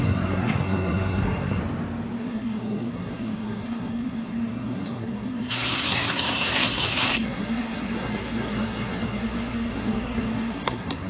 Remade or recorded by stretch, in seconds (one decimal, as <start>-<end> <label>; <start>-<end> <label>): 0.0-1.6 remade; 1.6-2.2 recorded; 2.2-11.1 remade